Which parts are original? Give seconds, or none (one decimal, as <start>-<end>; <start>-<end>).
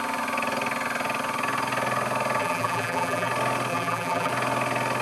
0.0-2.4; 3.3-3.7; 4.3-5.0